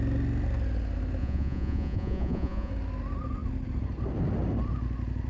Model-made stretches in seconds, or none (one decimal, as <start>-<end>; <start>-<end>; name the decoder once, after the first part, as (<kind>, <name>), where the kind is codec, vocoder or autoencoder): 1.2-2.7 (vocoder, Vocos)